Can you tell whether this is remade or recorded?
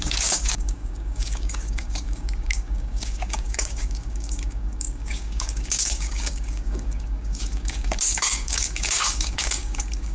remade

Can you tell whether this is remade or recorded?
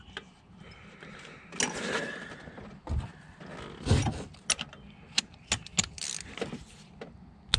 recorded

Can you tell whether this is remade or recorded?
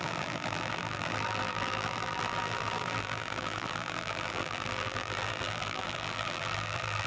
remade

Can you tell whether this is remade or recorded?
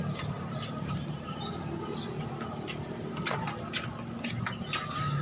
recorded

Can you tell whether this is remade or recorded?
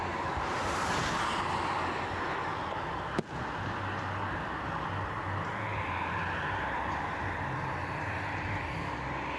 recorded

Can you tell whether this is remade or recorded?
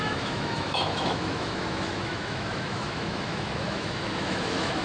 remade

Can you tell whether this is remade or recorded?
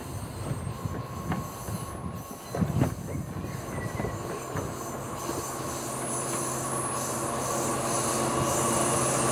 recorded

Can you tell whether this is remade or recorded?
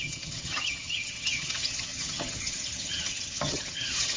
remade